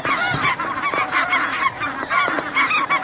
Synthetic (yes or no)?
no